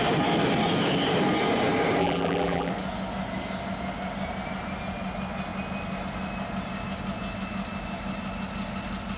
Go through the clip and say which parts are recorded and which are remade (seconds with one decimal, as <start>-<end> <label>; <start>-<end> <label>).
0.0-2.0 recorded; 2.0-2.7 remade; 2.7-9.2 recorded